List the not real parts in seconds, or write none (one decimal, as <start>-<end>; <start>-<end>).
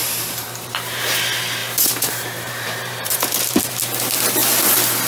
0.0-0.7; 1.6-3.7